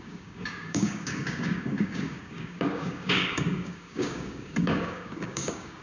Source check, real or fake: fake